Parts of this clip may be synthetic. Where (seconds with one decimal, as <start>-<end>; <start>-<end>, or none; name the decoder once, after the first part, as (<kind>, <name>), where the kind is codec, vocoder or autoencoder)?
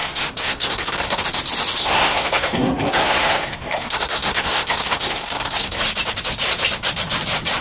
0.0-1.2 (codec, SNAC); 1.8-5.8